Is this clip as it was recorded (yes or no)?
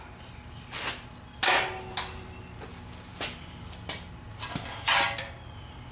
yes